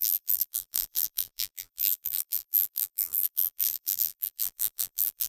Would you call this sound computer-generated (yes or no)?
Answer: yes